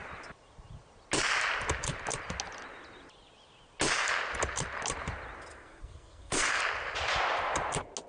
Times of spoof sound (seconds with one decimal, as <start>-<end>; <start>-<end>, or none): 5.5-6.6